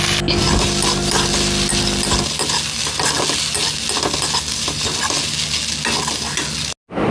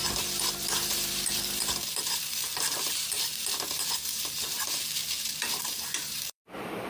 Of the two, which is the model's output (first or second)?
second